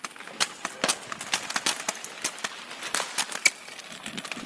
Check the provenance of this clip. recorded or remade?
recorded